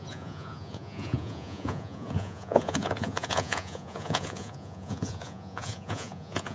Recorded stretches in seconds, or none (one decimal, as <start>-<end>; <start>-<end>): none